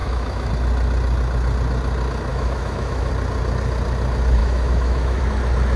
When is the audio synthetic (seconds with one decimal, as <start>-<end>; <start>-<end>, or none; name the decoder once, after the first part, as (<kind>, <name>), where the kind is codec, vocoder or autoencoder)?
0.0-0.5 (autoencoder, DAC-VAE); 2.3-3.1; 4.4-5.2